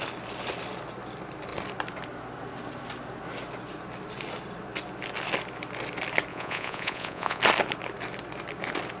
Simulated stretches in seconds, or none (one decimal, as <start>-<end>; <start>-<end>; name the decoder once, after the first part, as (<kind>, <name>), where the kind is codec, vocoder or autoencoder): 6.3-7.4 (vocoder, Vocos)

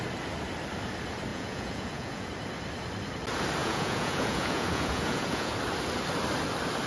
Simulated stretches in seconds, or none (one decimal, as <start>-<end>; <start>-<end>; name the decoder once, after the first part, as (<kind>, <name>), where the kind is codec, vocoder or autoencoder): 1.3-2.3 (vocoder, Vocos); 3.6-5.5

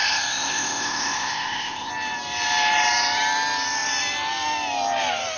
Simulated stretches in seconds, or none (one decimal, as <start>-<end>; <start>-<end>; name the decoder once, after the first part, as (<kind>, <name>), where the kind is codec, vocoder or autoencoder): 0.0-1.9 (codec, ZipCodec)

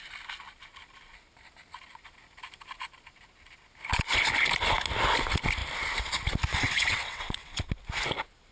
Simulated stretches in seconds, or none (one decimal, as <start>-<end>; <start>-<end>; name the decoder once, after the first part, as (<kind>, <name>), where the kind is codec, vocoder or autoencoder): 6.5-7.7 (vocoder, WaveNeXt)

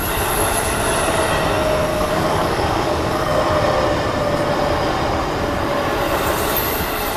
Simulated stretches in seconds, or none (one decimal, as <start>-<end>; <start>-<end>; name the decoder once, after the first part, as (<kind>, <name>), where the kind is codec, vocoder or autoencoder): 1.9-3.4 (codec, DAC)

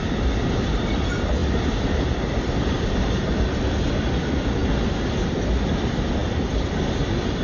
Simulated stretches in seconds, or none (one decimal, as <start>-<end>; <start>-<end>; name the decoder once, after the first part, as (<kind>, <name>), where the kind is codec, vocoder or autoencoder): 1.4-3.3 (vocoder, BigVGAN v2)